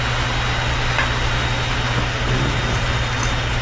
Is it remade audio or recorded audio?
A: recorded